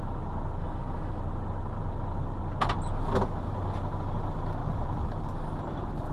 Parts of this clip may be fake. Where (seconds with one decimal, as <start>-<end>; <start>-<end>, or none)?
0.6-1.2